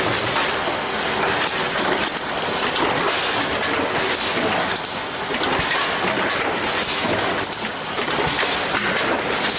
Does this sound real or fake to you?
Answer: real